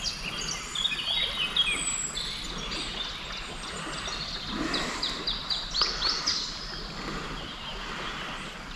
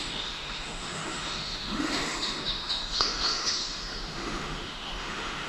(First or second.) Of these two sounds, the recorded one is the first